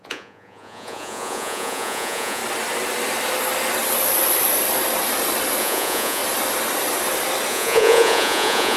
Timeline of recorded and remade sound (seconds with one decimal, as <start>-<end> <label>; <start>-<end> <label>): 0.0-2.4 remade; 2.4-5.6 recorded; 5.6-6.2 remade; 6.2-7.5 recorded; 7.5-8.8 remade